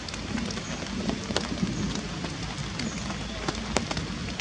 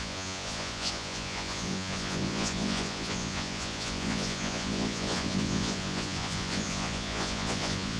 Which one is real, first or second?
first